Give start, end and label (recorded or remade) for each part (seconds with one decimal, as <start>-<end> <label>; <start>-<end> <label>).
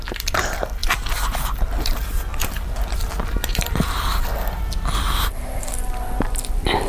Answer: 0.0-0.8 remade; 0.8-1.6 recorded; 1.6-6.9 remade